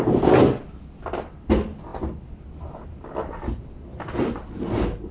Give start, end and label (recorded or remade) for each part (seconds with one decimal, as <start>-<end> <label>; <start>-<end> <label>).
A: 0.0-5.1 recorded